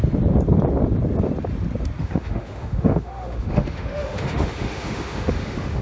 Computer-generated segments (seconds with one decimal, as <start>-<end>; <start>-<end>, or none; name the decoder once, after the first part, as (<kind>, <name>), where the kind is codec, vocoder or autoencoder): 2.0-5.8 (autoencoder, DAC-VAE)